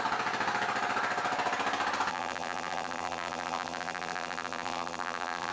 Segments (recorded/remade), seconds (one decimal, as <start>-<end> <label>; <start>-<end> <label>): 0.0-2.1 recorded; 2.1-5.5 remade